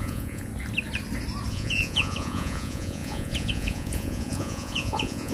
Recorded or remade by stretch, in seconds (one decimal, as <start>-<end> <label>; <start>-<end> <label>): 0.0-0.5 remade; 0.5-1.5 recorded; 1.5-5.3 remade